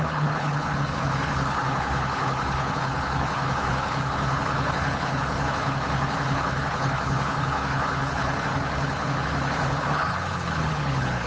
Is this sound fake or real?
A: fake